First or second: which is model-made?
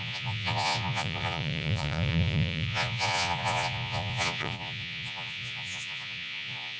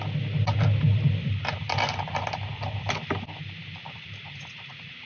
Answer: first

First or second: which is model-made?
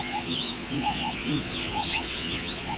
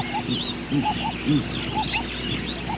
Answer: first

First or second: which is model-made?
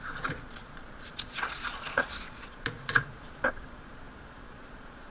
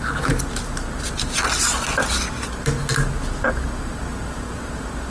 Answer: first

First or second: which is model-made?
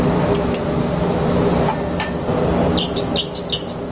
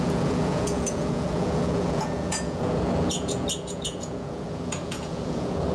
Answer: second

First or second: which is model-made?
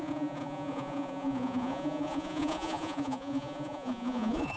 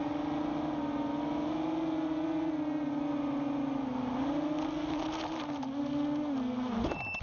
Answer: first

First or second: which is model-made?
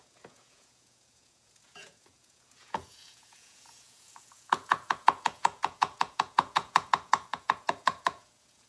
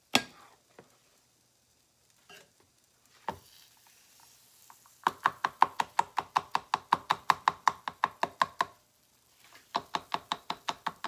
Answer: first